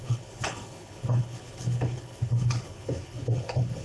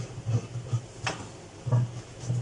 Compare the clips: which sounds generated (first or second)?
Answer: first